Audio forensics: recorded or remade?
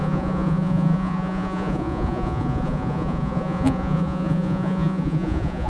remade